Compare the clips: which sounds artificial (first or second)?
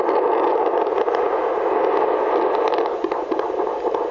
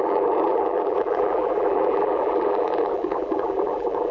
second